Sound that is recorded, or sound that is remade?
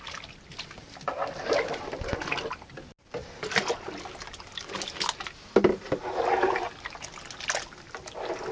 recorded